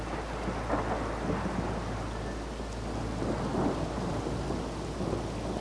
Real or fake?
real